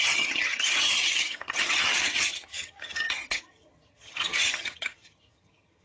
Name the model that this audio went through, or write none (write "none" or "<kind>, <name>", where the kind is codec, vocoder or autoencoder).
vocoder, HiFi-GAN